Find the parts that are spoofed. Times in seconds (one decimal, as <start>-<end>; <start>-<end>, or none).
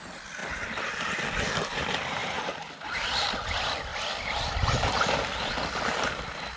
2.2-3.3; 3.9-6.6